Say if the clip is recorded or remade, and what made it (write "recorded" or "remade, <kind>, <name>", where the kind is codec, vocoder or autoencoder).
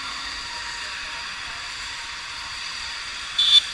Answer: remade, vocoder, BigVGAN v2